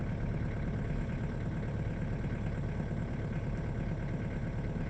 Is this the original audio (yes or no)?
yes